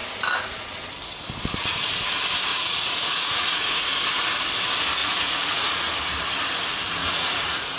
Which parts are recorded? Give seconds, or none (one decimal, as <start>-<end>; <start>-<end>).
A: 0.0-2.5; 3.9-5.0; 5.9-7.0